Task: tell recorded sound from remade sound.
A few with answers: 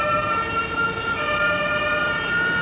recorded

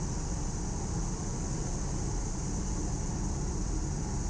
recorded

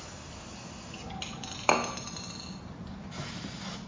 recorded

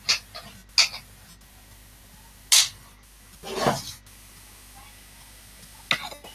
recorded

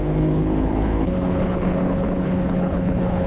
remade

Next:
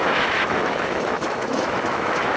remade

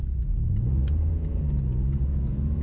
remade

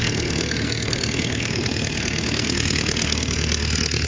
remade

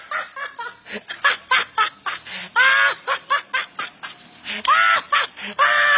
recorded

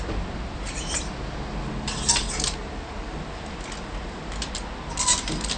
recorded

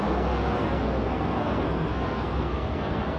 remade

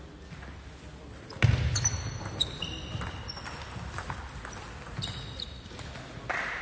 recorded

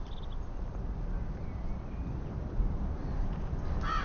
recorded